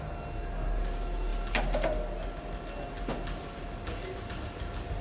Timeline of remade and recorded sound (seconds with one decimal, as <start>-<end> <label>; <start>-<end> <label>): 0.0-5.0 recorded